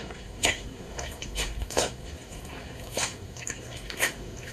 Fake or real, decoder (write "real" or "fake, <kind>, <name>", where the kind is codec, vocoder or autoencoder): fake, codec, SNAC